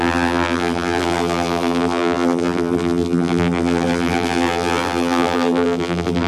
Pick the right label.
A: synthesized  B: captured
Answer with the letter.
A